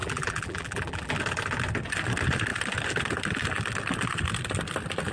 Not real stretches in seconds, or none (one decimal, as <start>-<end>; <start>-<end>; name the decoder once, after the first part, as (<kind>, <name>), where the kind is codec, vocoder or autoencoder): 0.0-1.2 (vocoder, BigVGAN v2)